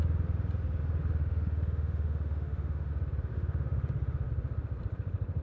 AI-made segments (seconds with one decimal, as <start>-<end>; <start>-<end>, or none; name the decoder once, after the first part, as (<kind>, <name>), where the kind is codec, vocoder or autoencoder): 1.2-2.9 (autoencoder, DAC-VAE); 3.3-4.3